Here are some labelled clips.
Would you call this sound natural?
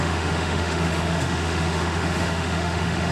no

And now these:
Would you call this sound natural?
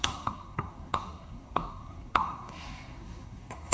no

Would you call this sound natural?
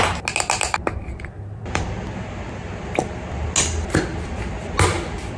yes